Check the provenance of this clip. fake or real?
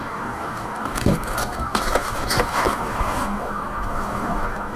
fake